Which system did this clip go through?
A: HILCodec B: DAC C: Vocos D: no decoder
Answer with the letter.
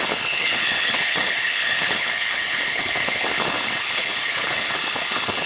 A